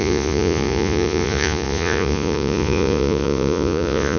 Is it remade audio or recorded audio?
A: remade